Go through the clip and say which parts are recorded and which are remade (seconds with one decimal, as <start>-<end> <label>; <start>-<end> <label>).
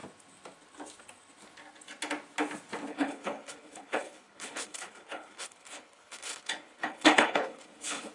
0.0-2.9 recorded; 2.9-8.1 remade